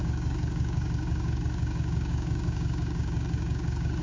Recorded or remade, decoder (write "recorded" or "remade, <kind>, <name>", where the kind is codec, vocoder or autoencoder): remade, codec, DAC